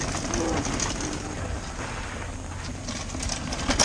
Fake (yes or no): no